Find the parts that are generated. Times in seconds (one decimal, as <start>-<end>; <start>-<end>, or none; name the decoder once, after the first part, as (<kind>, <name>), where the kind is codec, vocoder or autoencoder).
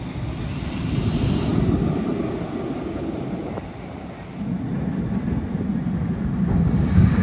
1.5-2.3 (vocoder, BigVGAN v2)